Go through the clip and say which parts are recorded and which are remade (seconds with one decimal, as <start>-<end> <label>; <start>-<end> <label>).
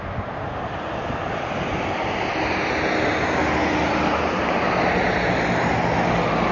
0.0-6.5 recorded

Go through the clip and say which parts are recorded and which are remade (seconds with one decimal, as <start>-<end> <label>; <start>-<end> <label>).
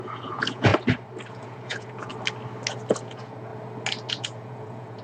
0.0-0.7 remade; 0.7-1.3 recorded; 1.3-2.1 remade; 2.1-2.9 recorded; 2.9-3.5 remade; 3.5-4.1 recorded; 4.1-5.0 remade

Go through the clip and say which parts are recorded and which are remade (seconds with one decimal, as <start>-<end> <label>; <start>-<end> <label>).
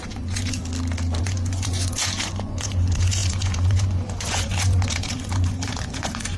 0.0-0.6 remade; 0.6-1.2 recorded; 1.2-6.4 remade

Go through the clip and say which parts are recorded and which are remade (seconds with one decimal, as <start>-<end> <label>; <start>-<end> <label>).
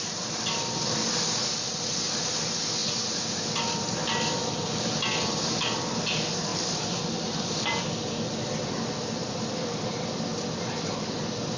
0.0-11.6 recorded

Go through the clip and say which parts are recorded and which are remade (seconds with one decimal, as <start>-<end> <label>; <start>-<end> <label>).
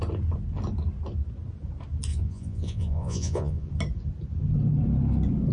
0.0-2.1 recorded; 2.1-3.7 remade; 3.7-5.5 recorded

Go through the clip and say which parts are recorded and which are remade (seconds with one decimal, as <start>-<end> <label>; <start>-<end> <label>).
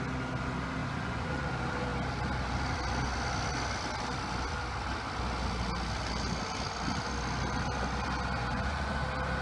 0.0-0.8 recorded; 0.8-1.5 remade; 1.5-8.4 recorded; 8.4-8.9 remade; 8.9-9.4 recorded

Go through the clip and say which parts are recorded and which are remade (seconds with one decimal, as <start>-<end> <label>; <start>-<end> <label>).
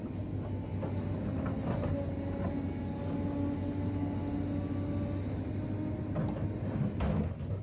0.0-7.6 recorded